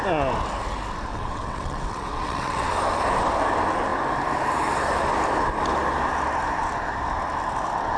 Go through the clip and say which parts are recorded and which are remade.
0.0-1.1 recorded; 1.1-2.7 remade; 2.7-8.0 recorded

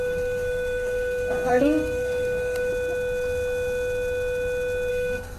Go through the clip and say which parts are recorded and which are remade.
0.0-2.7 remade; 2.7-4.9 recorded; 4.9-5.4 remade

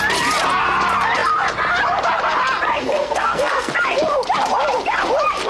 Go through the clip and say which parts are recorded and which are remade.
0.0-2.8 recorded; 2.8-3.7 remade; 3.7-5.5 recorded

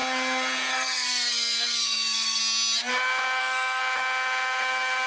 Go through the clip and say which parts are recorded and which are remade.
0.0-0.7 recorded; 0.7-2.4 remade; 2.4-3.4 recorded; 3.4-3.8 remade; 3.8-5.1 recorded

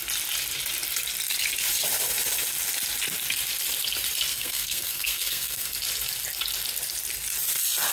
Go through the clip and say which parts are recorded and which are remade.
0.0-4.3 recorded; 4.3-5.7 remade; 5.7-7.9 recorded

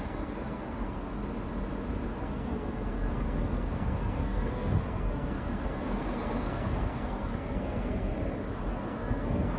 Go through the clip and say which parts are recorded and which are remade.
0.0-1.2 remade; 1.2-2.2 recorded; 2.2-8.1 remade; 8.1-8.7 recorded; 8.7-9.6 remade

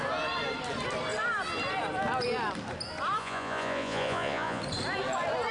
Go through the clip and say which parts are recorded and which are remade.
0.0-3.2 recorded; 3.2-4.6 remade; 4.6-5.5 recorded